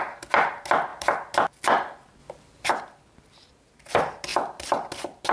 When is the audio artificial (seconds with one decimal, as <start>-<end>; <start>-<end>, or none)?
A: none